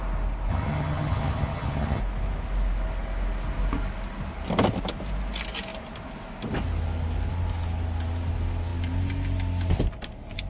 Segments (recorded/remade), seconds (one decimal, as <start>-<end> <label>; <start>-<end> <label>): 0.0-0.5 recorded; 0.5-2.0 remade; 2.0-10.5 recorded